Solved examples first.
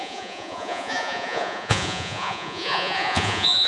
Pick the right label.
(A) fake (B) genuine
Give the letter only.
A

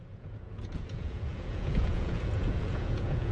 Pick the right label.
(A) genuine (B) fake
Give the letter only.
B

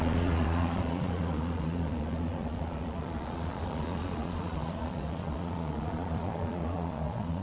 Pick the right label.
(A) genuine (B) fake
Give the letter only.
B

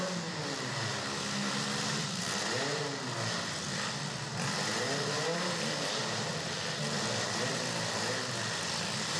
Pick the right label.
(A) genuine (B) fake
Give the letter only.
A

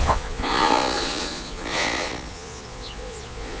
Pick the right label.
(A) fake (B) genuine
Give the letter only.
A